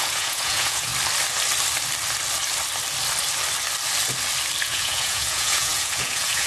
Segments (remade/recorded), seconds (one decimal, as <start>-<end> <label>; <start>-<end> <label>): 0.0-0.9 remade; 0.9-4.6 recorded; 4.6-6.5 remade